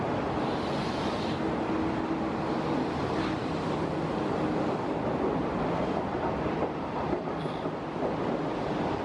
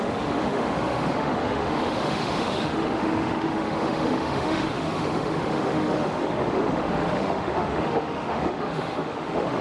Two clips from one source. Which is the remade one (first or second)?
second